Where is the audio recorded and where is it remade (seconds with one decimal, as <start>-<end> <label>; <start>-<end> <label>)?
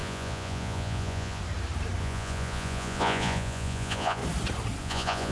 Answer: 0.0-1.4 remade; 1.4-2.0 recorded; 2.0-4.2 remade; 4.2-4.8 recorded; 4.8-5.3 remade